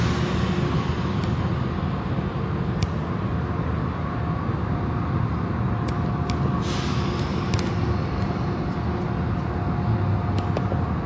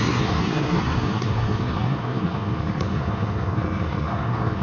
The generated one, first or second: second